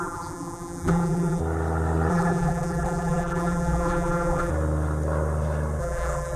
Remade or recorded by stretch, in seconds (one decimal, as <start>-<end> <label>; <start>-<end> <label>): 0.0-1.4 remade; 1.4-2.1 recorded; 2.1-4.5 remade; 4.5-5.8 recorded; 5.8-6.4 remade